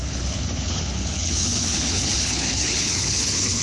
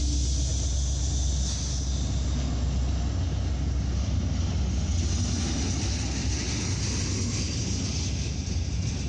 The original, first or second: second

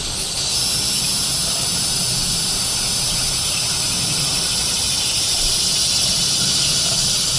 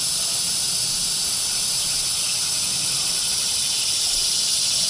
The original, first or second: first